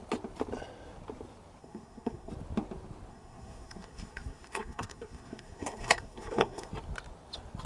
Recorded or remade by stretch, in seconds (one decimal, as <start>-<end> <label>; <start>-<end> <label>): 0.0-1.6 recorded; 1.6-2.3 remade; 2.3-3.1 recorded; 3.1-6.7 remade; 6.7-7.7 recorded